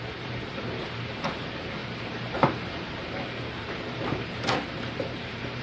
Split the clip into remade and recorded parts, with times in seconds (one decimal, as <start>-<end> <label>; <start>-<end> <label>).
0.0-1.8 recorded; 1.8-5.6 remade